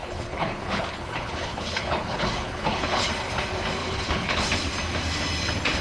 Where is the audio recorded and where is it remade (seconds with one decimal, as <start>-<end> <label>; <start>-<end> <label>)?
0.0-3.1 remade; 3.1-3.8 recorded; 3.8-4.4 remade; 4.4-5.8 recorded